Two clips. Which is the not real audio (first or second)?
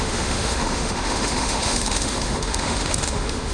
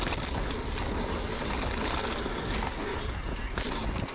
first